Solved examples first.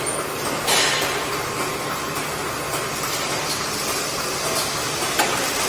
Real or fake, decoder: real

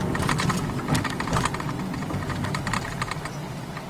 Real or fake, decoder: real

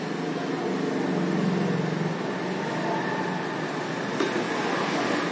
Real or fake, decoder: real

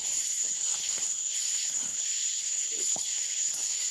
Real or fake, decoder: fake, codec, HILCodec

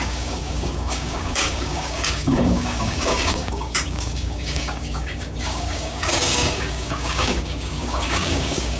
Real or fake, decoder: fake, codec, DAC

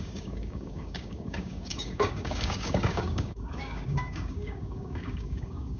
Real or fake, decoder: fake, codec, DAC